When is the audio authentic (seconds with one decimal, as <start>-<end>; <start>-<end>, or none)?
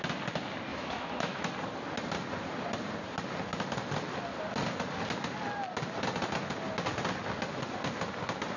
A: 0.0-0.7; 1.5-8.6